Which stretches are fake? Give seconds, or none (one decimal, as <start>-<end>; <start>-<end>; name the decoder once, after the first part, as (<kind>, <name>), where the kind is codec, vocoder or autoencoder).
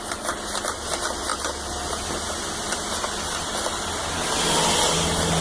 none